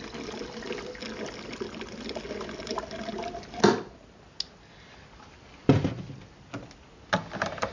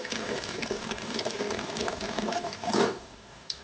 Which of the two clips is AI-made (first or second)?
second